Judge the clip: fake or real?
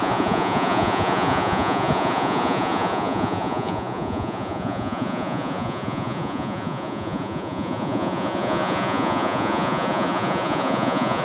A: fake